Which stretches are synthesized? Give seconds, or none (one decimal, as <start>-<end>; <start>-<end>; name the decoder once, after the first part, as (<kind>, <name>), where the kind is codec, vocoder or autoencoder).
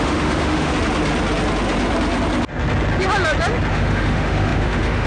0.0-0.7 (autoencoder, DAC-VAE); 3.7-5.1